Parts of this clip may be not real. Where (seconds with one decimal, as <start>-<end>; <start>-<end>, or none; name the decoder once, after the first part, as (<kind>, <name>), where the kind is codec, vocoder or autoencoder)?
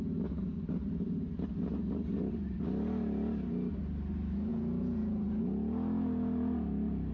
4.5-5.4 (vocoder, Vocos)